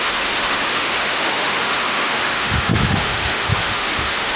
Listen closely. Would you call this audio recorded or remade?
remade